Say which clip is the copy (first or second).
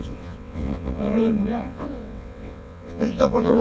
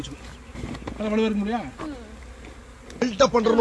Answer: first